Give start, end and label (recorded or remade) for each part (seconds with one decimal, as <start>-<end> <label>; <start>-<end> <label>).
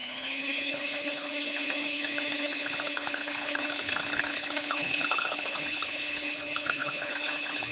0.0-7.7 remade